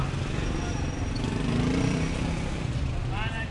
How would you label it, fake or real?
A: real